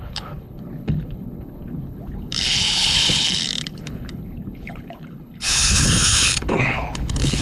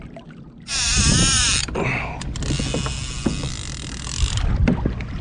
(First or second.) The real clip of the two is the second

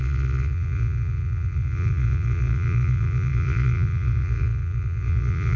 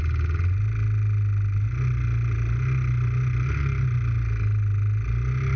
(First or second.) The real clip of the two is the second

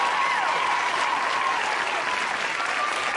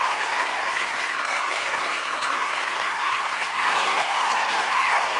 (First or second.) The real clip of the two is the first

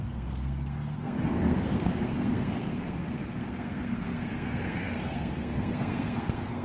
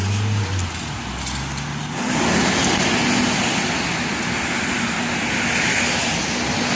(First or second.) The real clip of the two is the second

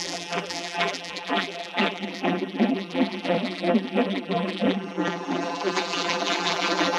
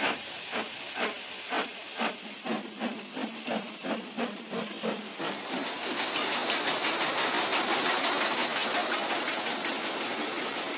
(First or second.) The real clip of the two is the second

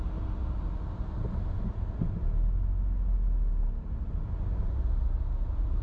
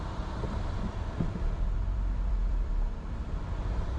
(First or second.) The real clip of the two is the first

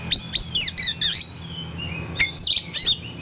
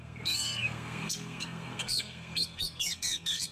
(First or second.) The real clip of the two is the first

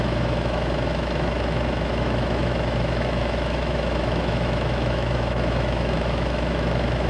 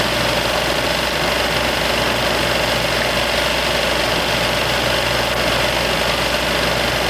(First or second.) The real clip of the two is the second